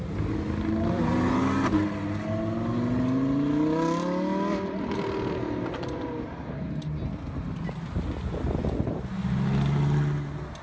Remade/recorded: recorded